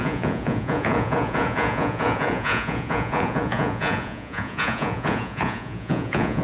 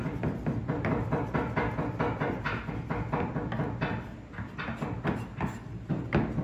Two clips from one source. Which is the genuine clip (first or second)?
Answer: second